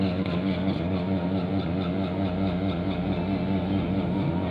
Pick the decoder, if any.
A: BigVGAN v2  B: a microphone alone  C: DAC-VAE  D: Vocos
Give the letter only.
B